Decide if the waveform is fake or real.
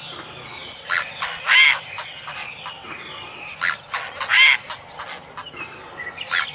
real